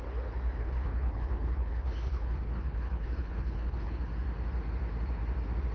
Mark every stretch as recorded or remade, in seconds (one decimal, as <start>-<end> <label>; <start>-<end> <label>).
0.0-0.6 recorded; 0.6-4.0 remade; 4.0-5.7 recorded